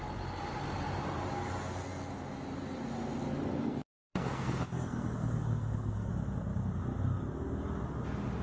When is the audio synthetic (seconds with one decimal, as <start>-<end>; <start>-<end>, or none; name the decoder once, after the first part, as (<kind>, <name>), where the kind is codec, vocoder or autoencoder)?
3.6-6.1 (codec, SNAC)